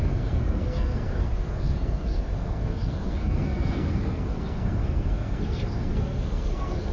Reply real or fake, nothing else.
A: fake